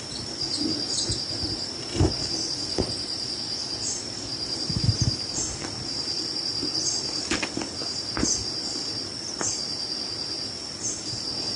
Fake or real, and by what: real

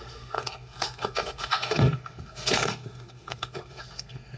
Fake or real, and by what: fake, codec, SNAC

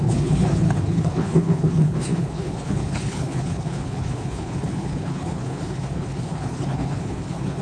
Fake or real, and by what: fake, codec, HILCodec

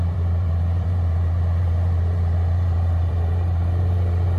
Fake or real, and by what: fake, vocoder, BigVGAN v2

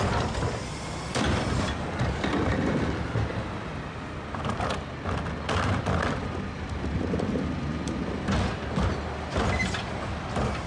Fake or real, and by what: real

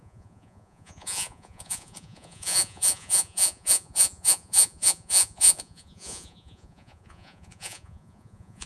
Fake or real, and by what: fake, vocoder, Vocos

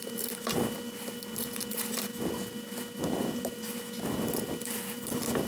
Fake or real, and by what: real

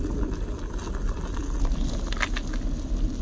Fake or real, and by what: real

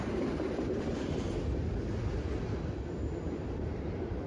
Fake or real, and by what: real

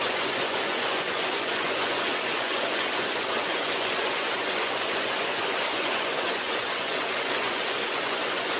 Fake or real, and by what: fake, vocoder, Vocos